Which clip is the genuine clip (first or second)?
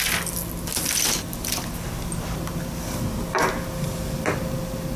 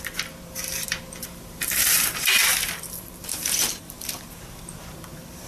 first